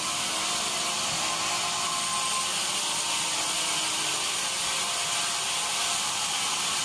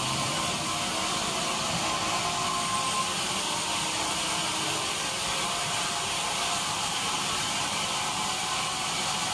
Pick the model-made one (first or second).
second